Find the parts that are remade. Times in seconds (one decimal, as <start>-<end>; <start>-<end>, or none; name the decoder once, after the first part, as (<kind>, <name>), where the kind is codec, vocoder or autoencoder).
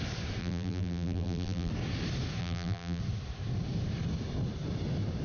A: 0.4-1.7 (vocoder, BigVGAN v2); 2.4-3.0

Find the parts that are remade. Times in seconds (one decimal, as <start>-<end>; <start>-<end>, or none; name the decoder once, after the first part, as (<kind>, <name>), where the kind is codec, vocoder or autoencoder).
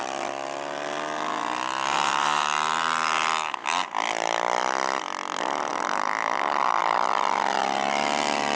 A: none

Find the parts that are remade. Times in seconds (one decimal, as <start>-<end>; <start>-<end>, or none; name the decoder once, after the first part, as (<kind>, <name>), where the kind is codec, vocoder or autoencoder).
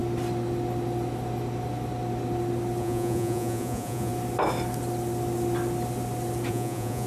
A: 2.8-4.1 (vocoder, Vocos); 6.5-7.1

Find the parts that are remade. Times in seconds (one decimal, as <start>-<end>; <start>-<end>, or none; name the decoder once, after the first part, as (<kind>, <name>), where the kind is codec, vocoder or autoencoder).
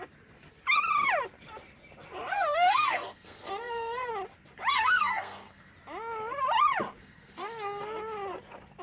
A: 2.3-4.1 (codec, SNAC); 4.7-5.7; 7.0-7.8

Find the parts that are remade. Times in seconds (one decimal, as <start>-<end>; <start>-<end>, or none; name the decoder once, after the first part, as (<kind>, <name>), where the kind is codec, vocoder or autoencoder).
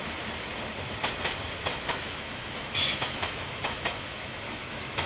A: 1.7-5.1 (autoencoder, DAC-VAE)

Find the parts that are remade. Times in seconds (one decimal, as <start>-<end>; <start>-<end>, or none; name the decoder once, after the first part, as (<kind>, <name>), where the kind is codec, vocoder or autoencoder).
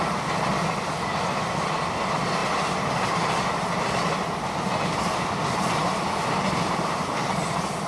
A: 5.8-7.2 (vocoder, BigVGAN v2)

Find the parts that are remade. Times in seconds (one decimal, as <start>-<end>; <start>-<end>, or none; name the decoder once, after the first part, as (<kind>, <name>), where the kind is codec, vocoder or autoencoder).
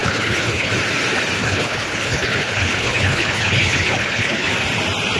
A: 0.0-0.7 (codec, HILCodec); 1.4-4.5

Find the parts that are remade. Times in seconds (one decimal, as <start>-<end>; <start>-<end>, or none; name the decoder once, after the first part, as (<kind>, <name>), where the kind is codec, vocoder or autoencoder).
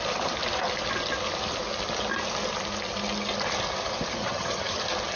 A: 4.2-4.8 (vocoder, HiFi-GAN)